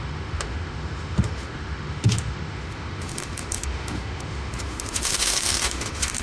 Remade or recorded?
remade